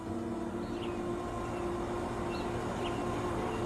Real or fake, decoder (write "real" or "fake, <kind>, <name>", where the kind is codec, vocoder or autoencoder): real